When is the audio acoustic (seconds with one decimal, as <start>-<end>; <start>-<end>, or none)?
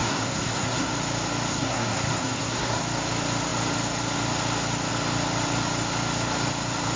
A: 0.9-1.5; 2.8-7.0